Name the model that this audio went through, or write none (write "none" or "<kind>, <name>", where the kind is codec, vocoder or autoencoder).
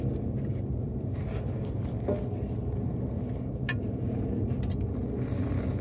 none